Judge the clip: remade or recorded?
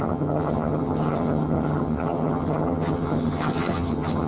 remade